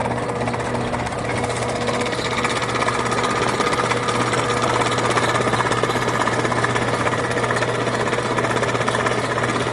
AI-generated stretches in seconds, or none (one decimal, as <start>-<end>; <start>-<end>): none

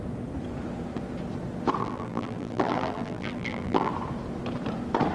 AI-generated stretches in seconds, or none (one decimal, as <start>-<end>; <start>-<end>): 1.8-3.9

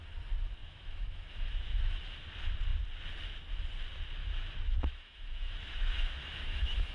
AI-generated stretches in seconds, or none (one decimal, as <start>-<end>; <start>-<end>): 0.6-2.0; 4.2-6.9